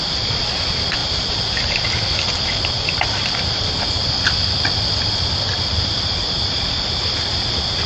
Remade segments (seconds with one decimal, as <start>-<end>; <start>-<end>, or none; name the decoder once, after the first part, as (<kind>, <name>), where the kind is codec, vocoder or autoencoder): 1.0-3.1 (vocoder, BigVGAN v2); 4.4-6.4